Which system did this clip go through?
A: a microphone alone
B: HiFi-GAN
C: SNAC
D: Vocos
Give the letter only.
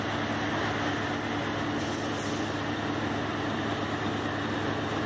A